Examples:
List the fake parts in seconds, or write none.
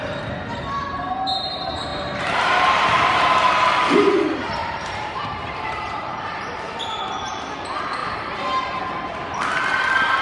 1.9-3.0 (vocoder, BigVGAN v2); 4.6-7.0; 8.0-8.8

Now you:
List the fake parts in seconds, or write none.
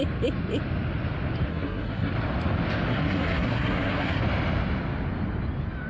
1.5-2.1 (codec, SNAC); 2.9-4.2